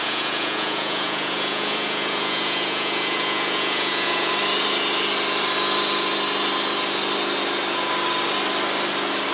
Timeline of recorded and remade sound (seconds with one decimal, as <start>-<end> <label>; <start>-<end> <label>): 0.0-4.3 remade; 4.3-9.3 recorded